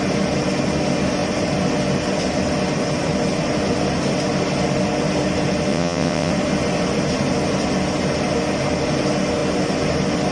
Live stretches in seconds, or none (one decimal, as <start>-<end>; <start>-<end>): 0.0-5.7; 6.3-10.3

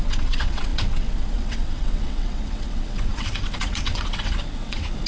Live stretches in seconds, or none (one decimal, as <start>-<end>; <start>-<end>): none

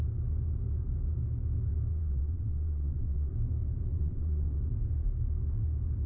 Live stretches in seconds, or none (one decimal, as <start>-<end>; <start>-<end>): 0.0-1.9; 3.3-3.9; 4.6-6.1

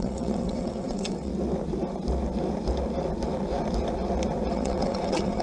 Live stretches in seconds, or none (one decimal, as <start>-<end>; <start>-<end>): 1.3-4.5

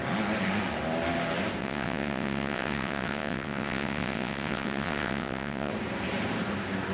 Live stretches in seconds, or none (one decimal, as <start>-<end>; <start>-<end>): 0.0-1.6; 5.7-6.9

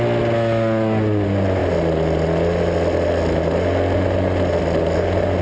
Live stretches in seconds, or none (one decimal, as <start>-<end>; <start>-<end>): 0.0-5.4